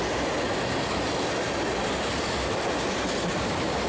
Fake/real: real